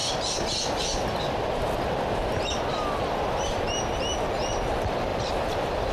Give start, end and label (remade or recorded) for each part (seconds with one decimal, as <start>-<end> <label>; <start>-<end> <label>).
0.0-5.1 recorded; 5.1-5.9 remade